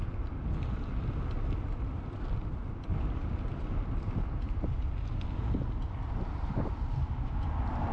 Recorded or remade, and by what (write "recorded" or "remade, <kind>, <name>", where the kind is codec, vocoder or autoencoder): recorded